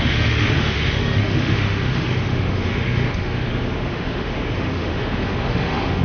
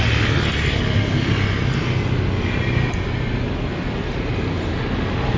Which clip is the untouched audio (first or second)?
second